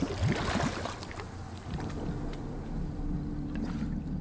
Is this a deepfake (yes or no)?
no